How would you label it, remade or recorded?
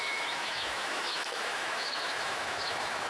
remade